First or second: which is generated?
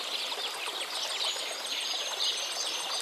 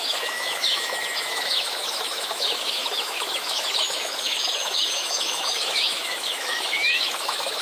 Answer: second